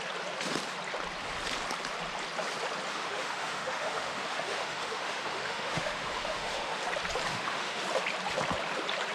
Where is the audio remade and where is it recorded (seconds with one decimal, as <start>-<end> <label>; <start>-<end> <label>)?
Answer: 0.0-2.9 recorded; 2.9-6.8 remade; 6.8-7.3 recorded; 7.3-7.8 remade; 7.8-9.1 recorded